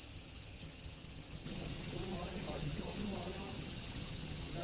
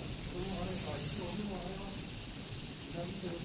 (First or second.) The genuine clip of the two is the second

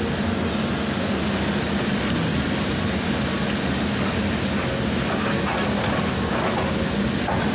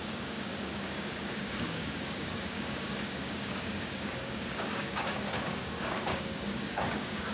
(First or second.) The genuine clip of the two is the first